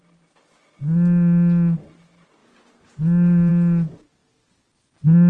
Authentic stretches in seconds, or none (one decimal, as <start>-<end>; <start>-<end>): 0.0-5.3